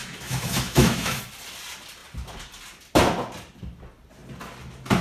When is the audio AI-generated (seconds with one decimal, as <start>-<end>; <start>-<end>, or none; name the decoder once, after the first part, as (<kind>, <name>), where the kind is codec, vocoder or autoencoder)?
0.0-1.2 (autoencoder, DAC-VAE)